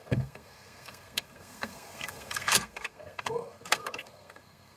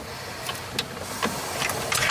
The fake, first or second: first